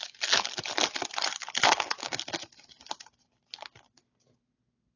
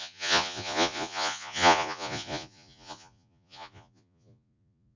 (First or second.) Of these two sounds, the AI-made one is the second